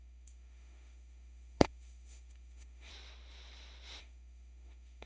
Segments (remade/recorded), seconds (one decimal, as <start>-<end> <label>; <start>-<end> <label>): 0.0-2.9 remade; 2.9-4.0 recorded; 4.0-5.1 remade